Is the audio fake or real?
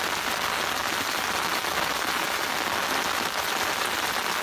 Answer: real